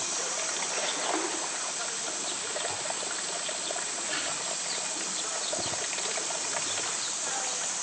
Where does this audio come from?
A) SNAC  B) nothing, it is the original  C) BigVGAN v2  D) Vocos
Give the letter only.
B